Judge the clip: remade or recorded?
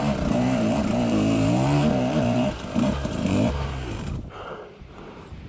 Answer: remade